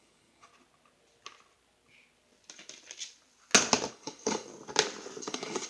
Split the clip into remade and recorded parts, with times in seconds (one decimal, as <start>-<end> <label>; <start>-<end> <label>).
0.0-0.5 remade; 0.5-3.9 recorded; 3.9-4.5 remade; 4.5-5.2 recorded; 5.2-5.7 remade